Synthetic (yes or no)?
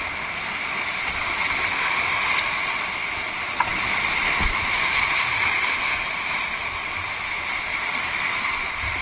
no